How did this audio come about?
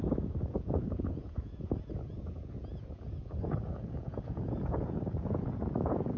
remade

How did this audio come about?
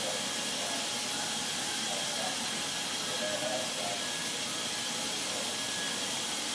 recorded